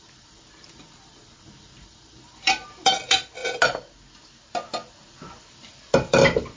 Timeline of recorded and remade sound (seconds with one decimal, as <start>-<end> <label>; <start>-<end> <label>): 0.0-3.4 remade; 3.4-5.5 recorded; 5.5-6.6 remade